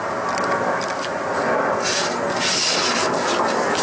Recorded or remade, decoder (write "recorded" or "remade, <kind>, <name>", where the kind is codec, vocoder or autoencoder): recorded